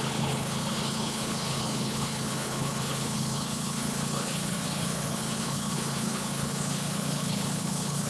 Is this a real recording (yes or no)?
no